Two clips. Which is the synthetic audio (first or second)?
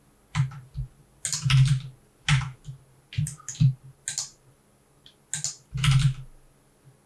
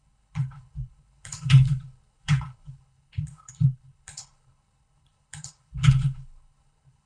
second